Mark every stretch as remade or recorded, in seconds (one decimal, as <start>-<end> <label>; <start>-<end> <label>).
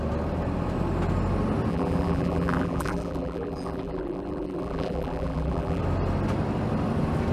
0.0-1.7 recorded; 1.7-5.8 remade; 5.8-7.3 recorded